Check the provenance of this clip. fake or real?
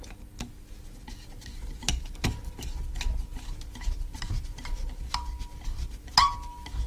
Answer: real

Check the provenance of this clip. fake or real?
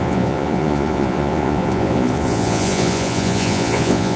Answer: fake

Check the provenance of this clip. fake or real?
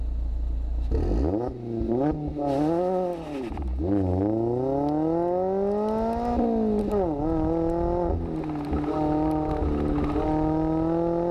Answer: real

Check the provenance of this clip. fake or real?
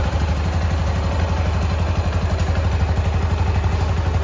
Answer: real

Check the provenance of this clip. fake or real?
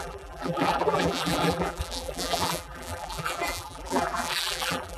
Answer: fake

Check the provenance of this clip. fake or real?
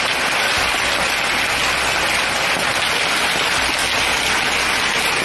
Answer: real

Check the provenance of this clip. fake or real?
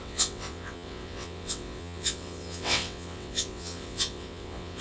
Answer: fake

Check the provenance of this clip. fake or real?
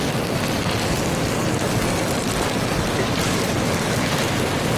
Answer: real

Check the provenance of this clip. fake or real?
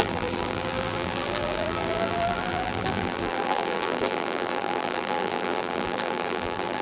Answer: fake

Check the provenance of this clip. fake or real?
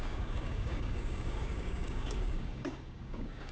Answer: fake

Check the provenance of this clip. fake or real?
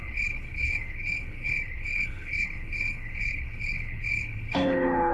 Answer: fake